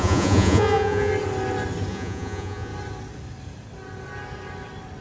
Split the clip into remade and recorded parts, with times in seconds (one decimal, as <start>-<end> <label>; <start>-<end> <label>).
0.0-1.1 remade; 1.1-1.9 recorded; 1.9-2.7 remade; 2.7-5.0 recorded